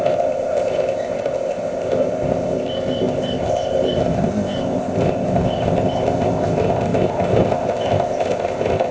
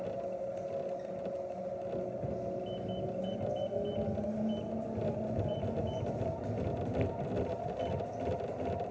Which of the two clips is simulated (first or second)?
first